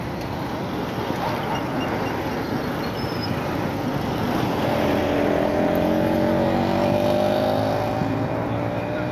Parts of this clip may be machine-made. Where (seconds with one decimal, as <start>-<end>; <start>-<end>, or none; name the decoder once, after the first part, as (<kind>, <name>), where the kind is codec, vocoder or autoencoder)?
8.0-9.1 (vocoder, BigVGAN v2)